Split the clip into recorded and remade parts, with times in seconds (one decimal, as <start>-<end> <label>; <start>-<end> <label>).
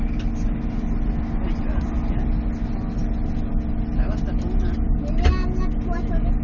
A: 0.0-6.4 recorded